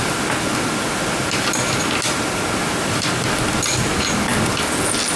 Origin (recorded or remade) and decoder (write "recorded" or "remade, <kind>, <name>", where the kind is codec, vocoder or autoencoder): recorded